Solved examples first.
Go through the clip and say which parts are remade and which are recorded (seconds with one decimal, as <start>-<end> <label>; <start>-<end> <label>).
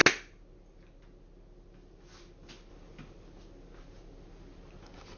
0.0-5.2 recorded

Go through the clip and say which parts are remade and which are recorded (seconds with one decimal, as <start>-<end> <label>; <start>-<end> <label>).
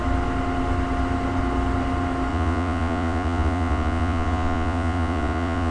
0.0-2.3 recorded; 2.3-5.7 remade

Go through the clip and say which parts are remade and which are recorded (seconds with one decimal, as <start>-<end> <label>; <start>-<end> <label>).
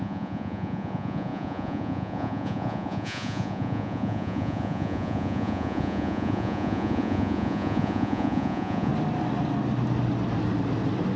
0.0-8.9 remade; 8.9-11.2 recorded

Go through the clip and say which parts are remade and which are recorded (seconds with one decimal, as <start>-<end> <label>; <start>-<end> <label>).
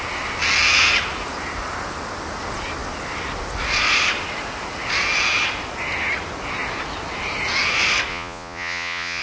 0.0-8.1 recorded; 8.1-9.2 remade